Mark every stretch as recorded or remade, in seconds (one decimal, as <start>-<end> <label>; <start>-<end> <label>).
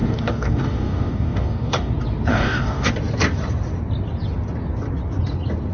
0.0-1.9 remade; 1.9-2.3 recorded; 2.3-2.9 remade; 2.9-5.7 recorded